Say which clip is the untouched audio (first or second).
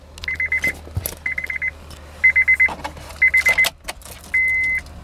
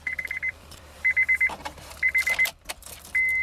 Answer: first